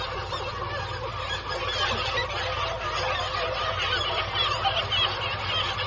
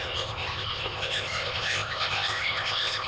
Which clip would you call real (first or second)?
first